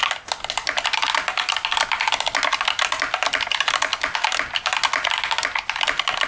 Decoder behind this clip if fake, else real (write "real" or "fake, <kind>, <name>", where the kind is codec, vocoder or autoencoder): real